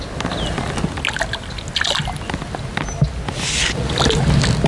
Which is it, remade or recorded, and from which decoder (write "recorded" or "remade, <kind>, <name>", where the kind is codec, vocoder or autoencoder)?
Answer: recorded